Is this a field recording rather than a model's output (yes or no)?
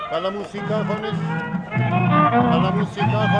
yes